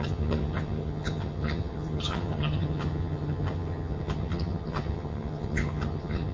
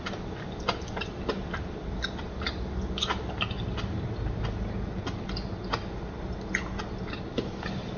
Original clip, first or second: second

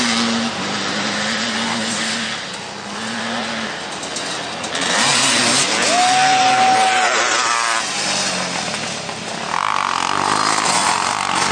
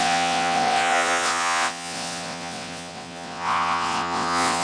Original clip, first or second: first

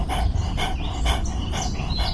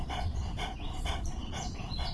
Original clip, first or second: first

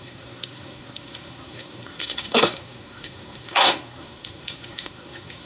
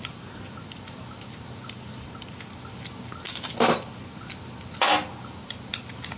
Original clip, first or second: second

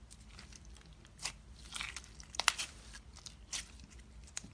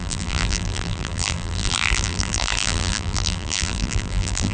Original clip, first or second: first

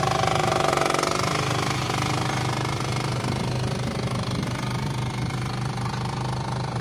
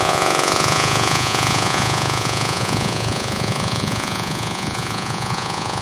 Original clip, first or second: first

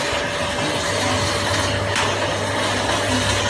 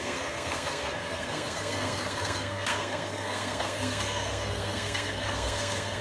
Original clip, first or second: first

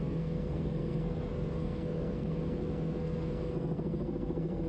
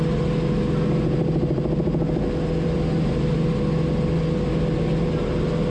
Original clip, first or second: second